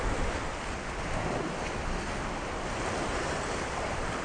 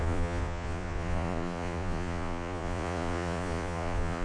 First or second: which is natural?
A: first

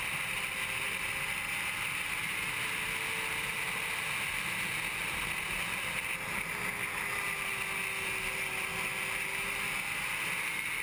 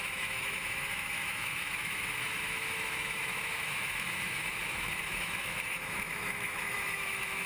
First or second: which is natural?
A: first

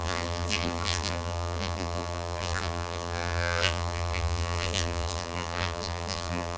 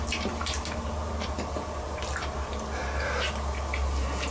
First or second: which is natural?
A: second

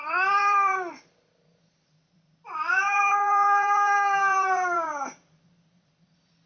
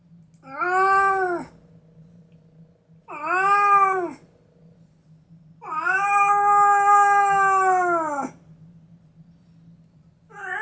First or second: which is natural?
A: second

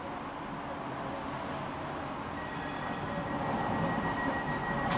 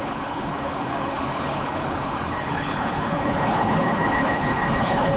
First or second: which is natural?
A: first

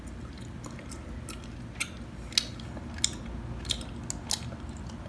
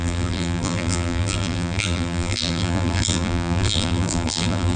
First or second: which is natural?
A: first